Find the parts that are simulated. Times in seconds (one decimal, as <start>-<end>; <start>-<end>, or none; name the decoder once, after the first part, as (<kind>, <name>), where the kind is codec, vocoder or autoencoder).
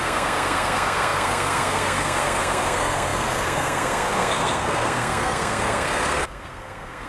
0.0-7.1 (codec, SNAC)